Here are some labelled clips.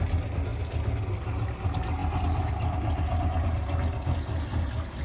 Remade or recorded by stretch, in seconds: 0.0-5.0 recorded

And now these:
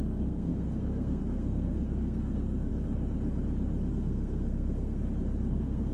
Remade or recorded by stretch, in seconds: 0.0-2.7 remade; 2.7-3.9 recorded; 3.9-5.0 remade; 5.0-5.5 recorded; 5.5-5.9 remade

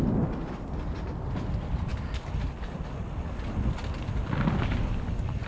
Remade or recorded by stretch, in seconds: 0.0-5.5 recorded

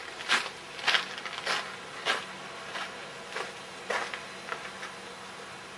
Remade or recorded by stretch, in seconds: 0.0-5.8 recorded

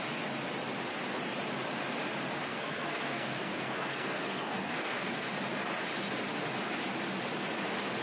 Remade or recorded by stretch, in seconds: 0.0-2.5 recorded; 2.5-5.3 remade; 5.3-8.0 recorded